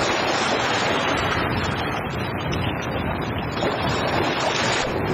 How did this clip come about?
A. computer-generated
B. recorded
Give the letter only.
A